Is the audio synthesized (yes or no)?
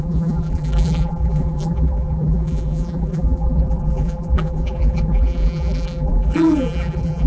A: yes